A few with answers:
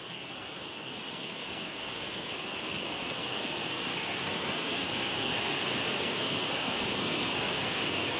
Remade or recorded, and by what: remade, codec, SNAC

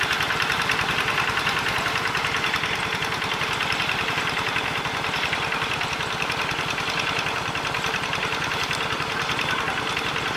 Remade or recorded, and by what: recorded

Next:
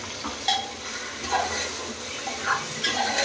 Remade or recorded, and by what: recorded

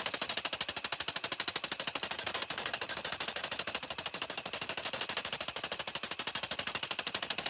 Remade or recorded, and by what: recorded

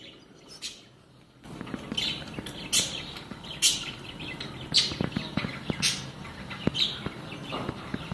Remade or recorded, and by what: recorded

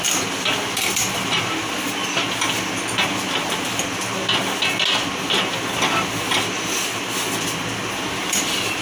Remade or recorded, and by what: recorded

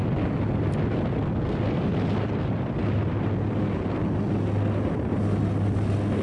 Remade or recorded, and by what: recorded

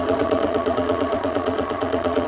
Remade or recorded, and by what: remade, vocoder, Vocos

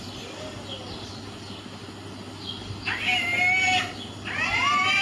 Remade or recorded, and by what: recorded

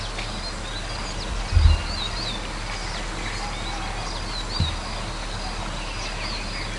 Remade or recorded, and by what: recorded